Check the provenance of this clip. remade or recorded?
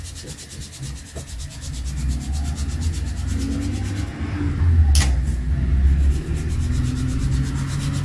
recorded